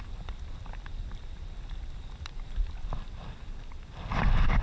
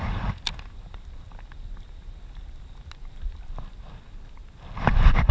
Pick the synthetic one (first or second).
first